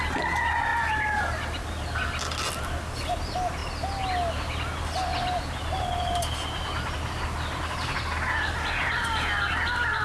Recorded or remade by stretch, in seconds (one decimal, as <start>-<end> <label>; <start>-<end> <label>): 0.0-10.0 recorded